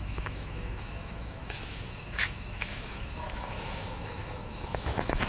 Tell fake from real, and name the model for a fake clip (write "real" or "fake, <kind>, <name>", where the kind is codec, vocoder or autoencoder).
fake, autoencoder, DAC-VAE